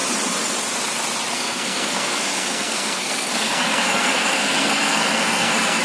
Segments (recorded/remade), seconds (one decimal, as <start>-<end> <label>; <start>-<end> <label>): 0.0-1.3 recorded; 1.3-5.8 remade